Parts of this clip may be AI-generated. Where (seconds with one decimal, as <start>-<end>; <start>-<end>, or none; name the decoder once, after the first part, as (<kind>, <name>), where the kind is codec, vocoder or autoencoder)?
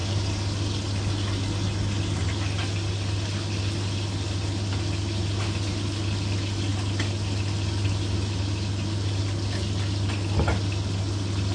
none